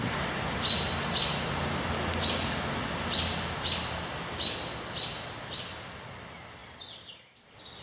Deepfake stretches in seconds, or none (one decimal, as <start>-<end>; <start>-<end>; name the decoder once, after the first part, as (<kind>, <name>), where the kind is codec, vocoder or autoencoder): none